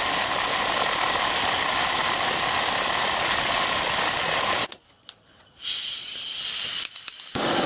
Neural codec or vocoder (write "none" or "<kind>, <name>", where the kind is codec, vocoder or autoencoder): none